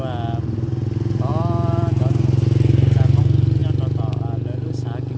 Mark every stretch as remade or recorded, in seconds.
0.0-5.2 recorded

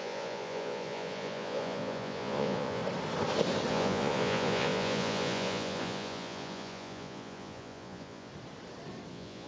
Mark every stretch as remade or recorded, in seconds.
0.0-2.8 remade; 2.8-3.7 recorded; 3.7-8.3 remade; 8.3-9.1 recorded; 9.1-9.5 remade

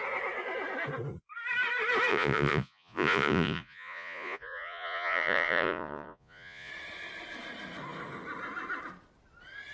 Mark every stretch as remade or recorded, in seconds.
0.0-2.1 recorded; 2.1-6.7 remade; 6.7-9.7 recorded

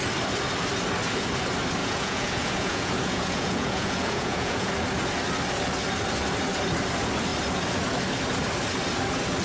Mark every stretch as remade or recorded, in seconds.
0.0-1.8 recorded; 1.8-4.7 remade; 4.7-9.4 recorded

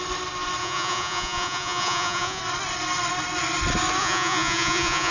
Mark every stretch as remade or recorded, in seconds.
0.0-0.6 recorded; 0.6-2.4 remade; 2.4-4.0 recorded; 4.0-5.1 remade

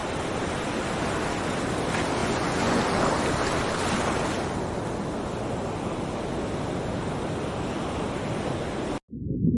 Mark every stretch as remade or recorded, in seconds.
0.0-2.2 recorded; 2.2-2.8 remade; 2.8-9.6 recorded

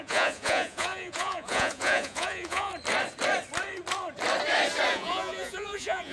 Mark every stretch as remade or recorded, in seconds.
0.0-2.7 remade; 2.7-4.9 recorded; 4.9-6.1 remade